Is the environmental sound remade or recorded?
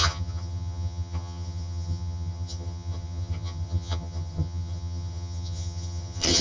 remade